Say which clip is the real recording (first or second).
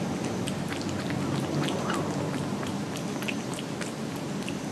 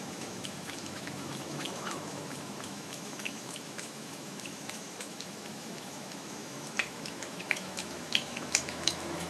first